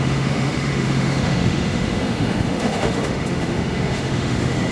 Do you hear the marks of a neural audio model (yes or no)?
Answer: yes